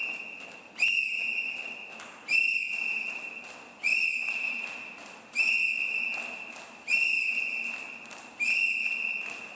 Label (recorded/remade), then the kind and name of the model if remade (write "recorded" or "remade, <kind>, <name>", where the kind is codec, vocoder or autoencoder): recorded